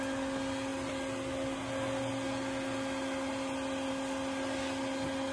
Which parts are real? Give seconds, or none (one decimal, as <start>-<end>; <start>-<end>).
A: 0.0-5.3